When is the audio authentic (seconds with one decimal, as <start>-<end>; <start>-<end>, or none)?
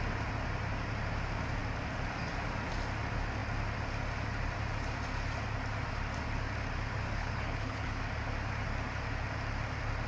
0.0-7.2; 8.0-10.1